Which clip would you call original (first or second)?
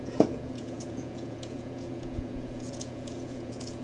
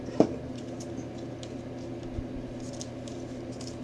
second